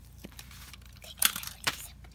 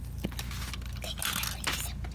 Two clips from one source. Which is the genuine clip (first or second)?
second